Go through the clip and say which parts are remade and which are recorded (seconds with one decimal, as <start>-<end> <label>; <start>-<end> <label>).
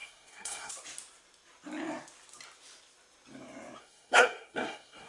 0.0-0.7 remade; 0.7-3.8 recorded; 3.8-5.1 remade